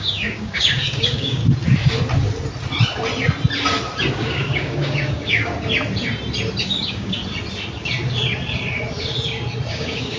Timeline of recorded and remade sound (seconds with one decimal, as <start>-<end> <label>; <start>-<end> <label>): 0.0-1.4 remade; 1.4-4.1 recorded; 4.1-5.5 remade; 5.5-6.6 recorded; 6.6-7.2 remade; 7.2-9.7 recorded; 9.7-10.2 remade